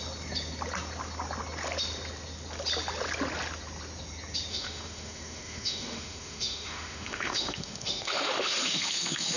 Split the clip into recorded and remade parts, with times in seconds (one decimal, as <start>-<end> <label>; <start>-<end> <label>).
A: 0.0-4.5 recorded; 4.5-9.4 remade